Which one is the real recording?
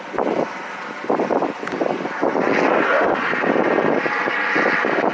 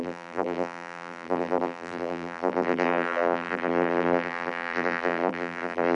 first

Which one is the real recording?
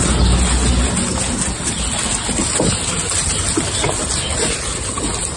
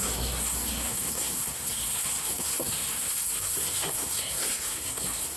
first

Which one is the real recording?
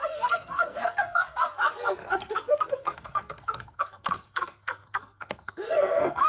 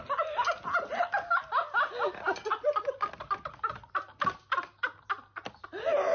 second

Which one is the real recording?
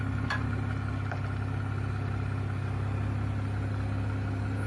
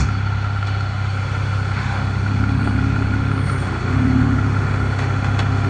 first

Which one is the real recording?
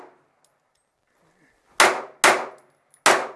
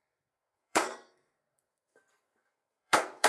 first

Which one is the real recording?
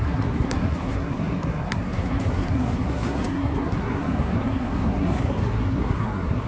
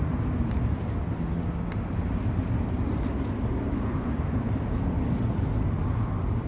second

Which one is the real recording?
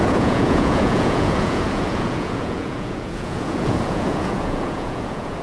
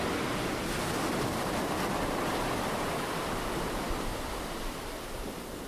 second